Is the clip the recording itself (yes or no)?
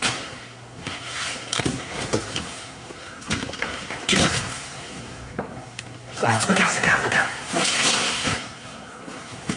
no